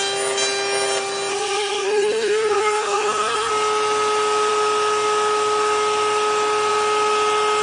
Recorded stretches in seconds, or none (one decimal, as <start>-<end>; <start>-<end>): 0.0-1.3; 3.5-7.6